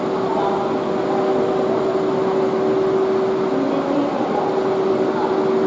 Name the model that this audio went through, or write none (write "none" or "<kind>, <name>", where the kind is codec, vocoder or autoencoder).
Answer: none